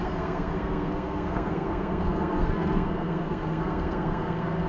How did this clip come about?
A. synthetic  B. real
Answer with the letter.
A